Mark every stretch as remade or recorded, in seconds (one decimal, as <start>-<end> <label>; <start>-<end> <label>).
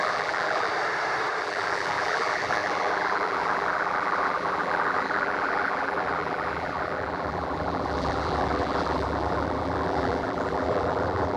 0.0-0.7 remade; 0.7-1.4 recorded; 1.4-11.4 remade